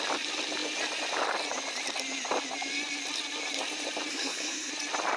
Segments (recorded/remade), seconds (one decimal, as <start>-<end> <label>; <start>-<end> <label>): 0.0-4.1 recorded; 4.1-4.7 remade; 4.7-5.2 recorded